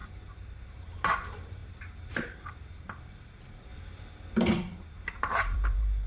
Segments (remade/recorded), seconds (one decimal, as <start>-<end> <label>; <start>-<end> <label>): 0.0-1.6 remade; 1.6-2.5 recorded; 2.5-3.7 remade; 3.7-4.4 recorded; 4.4-6.1 remade